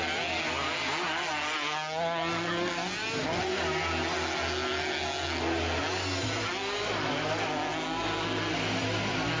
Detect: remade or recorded recorded